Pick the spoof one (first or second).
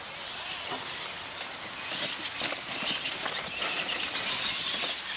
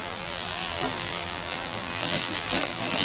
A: second